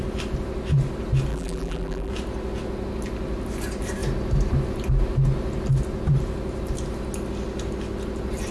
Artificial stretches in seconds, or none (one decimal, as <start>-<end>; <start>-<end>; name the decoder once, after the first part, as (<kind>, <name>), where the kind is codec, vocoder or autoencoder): 1.3-2.1 (vocoder, BigVGAN v2)